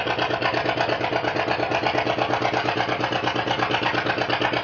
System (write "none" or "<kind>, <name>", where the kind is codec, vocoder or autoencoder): none